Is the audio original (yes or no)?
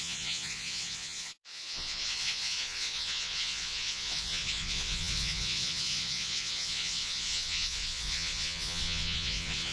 no